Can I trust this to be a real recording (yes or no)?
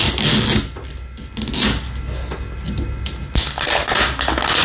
yes